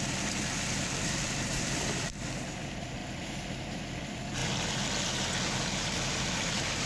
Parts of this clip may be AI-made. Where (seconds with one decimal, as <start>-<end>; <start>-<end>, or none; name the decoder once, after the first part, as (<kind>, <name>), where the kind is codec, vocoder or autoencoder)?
0.0-3.0 (vocoder, BigVGAN v2); 4.0-4.4; 5.8-6.9